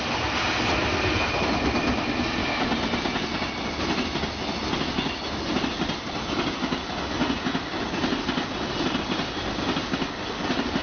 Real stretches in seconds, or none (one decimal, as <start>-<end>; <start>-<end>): 0.0-10.8